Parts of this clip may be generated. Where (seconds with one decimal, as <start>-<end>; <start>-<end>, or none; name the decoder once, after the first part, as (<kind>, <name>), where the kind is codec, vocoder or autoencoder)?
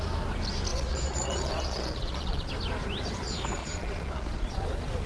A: 0.7-2.5 (vocoder, Vocos); 3.6-4.6